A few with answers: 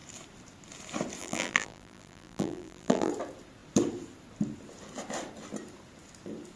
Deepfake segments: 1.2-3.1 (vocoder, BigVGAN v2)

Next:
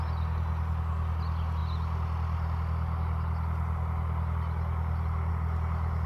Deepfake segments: none

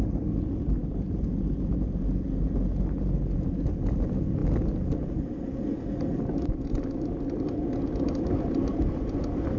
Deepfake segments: none

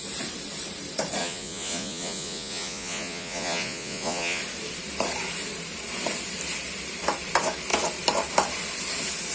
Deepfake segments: 1.2-4.4 (vocoder, Vocos)